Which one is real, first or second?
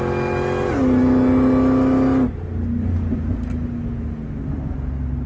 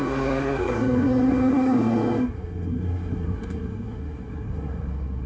first